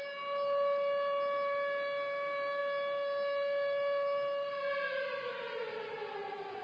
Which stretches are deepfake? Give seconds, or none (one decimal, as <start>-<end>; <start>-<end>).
none